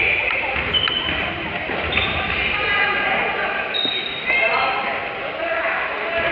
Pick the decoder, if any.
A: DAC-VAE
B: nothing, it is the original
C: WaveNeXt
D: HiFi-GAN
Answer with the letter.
B